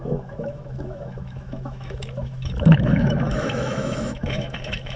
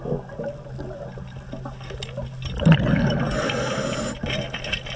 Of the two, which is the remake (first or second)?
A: first